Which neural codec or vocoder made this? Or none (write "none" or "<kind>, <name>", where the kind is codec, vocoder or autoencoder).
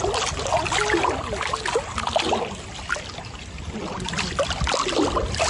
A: none